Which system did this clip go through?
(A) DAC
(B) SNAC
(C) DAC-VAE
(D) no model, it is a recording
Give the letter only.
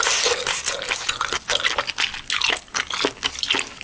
D